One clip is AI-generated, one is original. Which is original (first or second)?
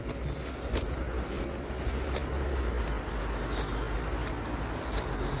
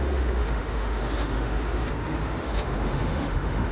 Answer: first